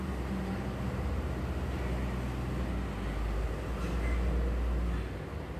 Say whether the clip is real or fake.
real